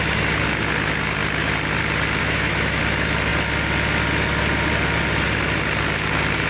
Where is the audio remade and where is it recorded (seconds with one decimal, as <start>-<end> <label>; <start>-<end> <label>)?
0.0-2.2 recorded; 2.2-2.8 remade; 2.8-6.5 recorded